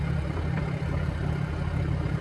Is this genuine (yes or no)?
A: yes